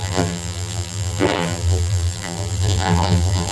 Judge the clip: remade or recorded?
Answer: remade